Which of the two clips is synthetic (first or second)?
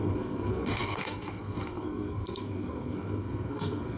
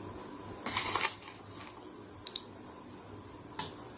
first